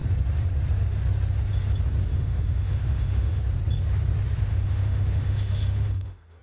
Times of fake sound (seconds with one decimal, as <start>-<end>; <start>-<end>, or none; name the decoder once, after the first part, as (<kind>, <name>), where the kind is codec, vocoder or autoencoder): 2.1-3.4 (autoencoder, DAC-VAE); 4.5-6.4